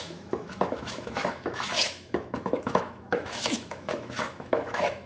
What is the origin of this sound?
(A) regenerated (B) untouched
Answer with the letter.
A